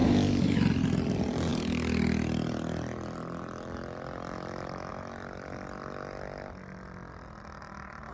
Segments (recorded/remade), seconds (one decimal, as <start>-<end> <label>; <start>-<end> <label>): 0.0-0.6 remade; 0.6-8.1 recorded